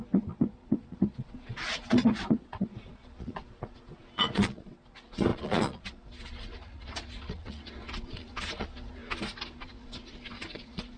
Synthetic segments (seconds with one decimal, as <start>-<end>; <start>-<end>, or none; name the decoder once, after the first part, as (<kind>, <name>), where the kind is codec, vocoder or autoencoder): 0.0-9.0 (vocoder, Vocos); 9.6-11.0